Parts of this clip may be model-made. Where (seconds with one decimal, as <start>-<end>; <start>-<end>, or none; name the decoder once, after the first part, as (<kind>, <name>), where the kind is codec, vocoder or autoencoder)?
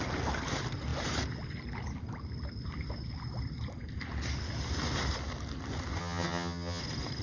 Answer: 6.0-6.8 (vocoder, HiFi-GAN)